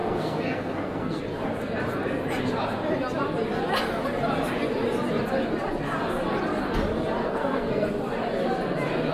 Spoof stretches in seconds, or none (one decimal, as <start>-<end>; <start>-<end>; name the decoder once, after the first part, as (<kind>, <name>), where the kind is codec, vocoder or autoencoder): 0.0-1.2 (codec, SNAC); 7.2-7.9